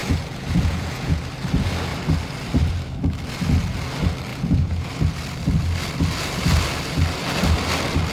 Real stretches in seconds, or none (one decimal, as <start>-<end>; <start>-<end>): 1.2-4.3; 4.9-8.1